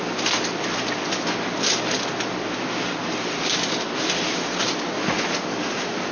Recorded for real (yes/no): yes